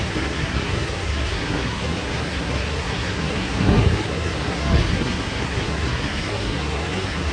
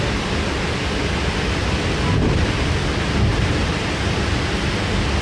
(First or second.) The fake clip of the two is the first